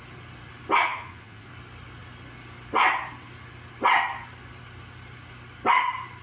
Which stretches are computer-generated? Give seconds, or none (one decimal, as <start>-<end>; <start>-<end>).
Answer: 0.8-1.5